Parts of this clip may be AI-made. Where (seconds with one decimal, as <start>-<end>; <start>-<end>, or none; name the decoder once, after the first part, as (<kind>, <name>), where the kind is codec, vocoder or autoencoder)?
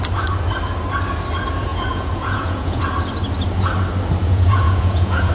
1.7-2.8 (vocoder, Vocos); 4.2-5.3